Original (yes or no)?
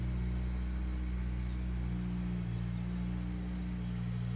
yes